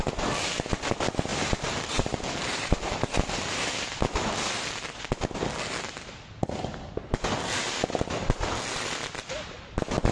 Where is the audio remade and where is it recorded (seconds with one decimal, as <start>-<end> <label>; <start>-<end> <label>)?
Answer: 0.0-1.3 recorded; 1.3-3.6 remade; 3.6-10.1 recorded